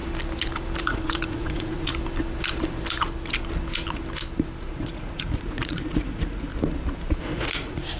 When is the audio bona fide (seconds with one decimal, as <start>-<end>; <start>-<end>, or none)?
0.0-0.8; 1.9-4.7; 6.5-7.2